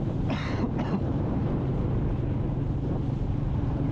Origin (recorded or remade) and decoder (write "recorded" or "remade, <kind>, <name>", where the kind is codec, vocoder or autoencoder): remade, vocoder, BigVGAN v2